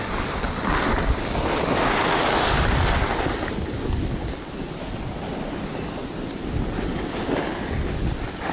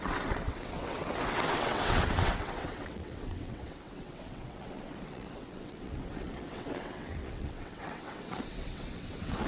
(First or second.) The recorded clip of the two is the first